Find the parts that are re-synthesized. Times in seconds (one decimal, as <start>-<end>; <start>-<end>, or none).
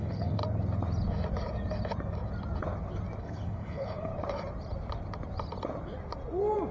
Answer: 0.0-0.4; 3.2-4.1